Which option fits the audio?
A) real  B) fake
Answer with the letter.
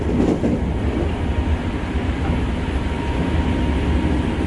A